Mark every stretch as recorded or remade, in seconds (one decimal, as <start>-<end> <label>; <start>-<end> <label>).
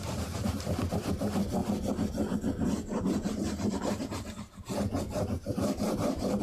0.0-1.6 remade; 1.6-3.0 recorded; 3.0-6.4 remade